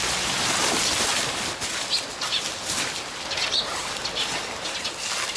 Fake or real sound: real